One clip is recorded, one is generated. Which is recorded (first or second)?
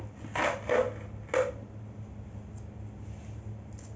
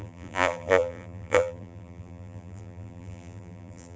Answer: first